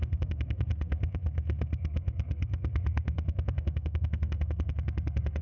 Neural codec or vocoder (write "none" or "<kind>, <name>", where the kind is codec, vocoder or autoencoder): codec, SNAC